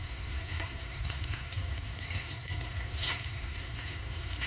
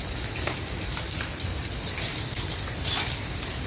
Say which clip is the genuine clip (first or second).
second